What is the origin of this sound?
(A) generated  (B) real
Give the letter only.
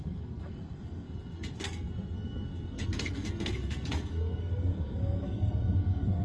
A